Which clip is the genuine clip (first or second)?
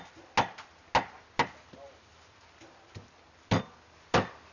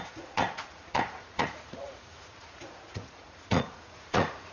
first